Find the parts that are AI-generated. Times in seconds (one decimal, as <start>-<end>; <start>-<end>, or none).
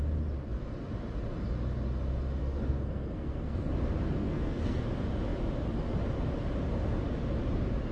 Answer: 2.4-3.7; 4.2-4.8